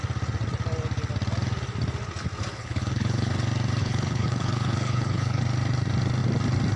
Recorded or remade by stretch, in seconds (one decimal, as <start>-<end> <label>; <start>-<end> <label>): 0.0-2.5 recorded; 2.5-3.3 remade; 3.3-3.8 recorded; 3.8-5.4 remade; 5.4-6.8 recorded